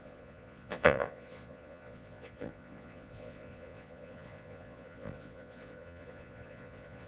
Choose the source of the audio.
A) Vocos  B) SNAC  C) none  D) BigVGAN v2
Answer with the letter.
A